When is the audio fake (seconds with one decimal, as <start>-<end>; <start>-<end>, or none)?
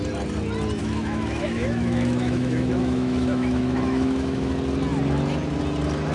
0.8-4.5